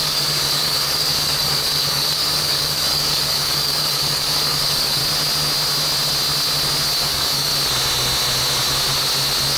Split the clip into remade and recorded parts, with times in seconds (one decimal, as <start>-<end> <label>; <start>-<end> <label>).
0.0-5.0 remade; 5.0-7.0 recorded; 7.0-7.5 remade; 7.5-9.6 recorded